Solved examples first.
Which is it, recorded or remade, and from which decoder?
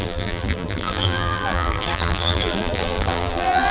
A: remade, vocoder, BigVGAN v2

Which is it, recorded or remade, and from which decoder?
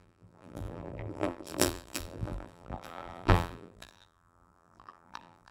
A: remade, vocoder, BigVGAN v2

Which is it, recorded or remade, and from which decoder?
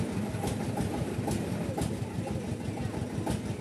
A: recorded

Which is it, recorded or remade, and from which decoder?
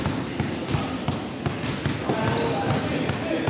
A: recorded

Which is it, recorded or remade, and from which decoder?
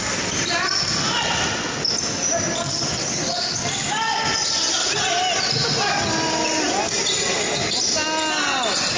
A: recorded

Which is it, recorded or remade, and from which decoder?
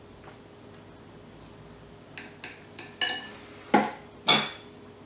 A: recorded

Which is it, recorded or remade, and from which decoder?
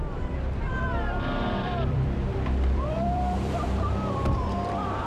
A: remade, vocoder, BigVGAN v2